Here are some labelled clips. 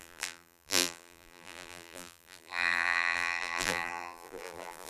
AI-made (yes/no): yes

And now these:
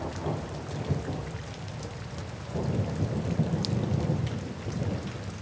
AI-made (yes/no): no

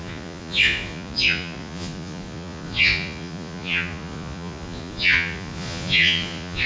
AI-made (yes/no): yes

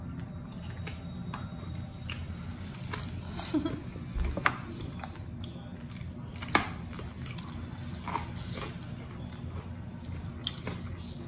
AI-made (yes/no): no